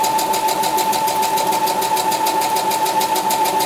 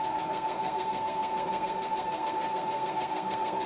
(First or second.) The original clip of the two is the first